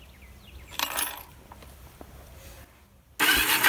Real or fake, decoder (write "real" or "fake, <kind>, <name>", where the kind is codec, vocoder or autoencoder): real